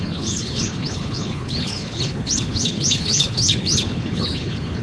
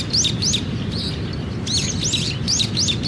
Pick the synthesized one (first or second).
first